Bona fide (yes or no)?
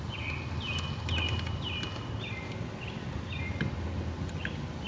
yes